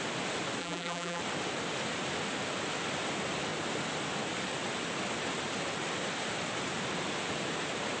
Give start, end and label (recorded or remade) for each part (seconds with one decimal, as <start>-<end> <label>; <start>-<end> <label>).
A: 0.0-0.6 recorded; 0.6-1.2 remade; 1.2-8.0 recorded